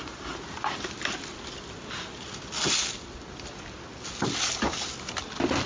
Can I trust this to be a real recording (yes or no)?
yes